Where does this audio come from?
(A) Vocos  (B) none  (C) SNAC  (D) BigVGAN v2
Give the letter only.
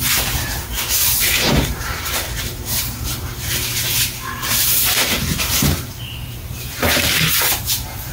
D